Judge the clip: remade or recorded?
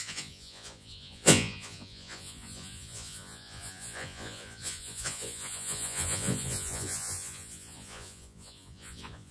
remade